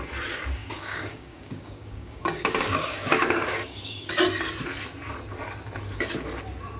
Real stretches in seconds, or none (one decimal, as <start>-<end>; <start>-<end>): 0.0-0.6; 4.1-6.8